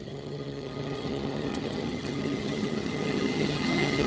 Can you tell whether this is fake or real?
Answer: fake